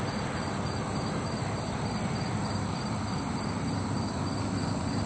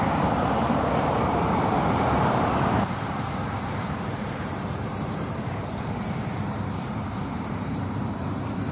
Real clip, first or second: first